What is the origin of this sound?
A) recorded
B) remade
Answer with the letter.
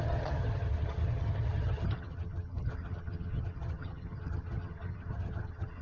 B